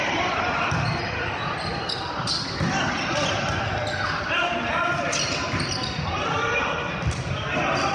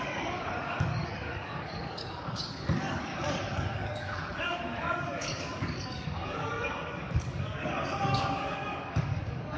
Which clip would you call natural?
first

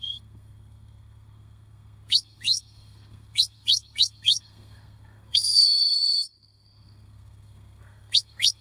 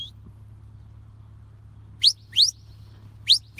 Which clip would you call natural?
second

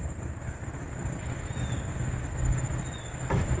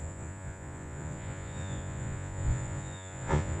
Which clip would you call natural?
first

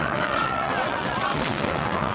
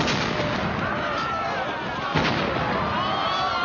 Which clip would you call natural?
second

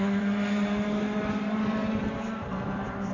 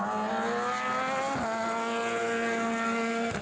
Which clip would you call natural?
second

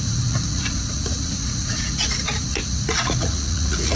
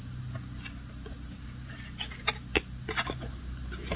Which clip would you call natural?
second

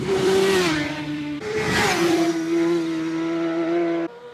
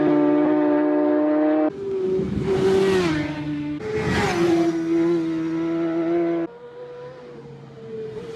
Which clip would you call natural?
second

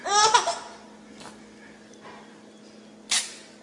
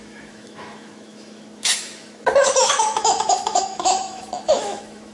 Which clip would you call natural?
first